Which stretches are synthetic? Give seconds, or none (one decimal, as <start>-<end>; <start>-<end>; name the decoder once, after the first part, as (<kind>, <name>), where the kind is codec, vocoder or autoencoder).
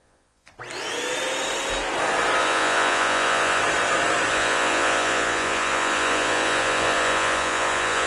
0.0-0.5 (vocoder, Vocos); 2.4-3.6; 4.3-8.1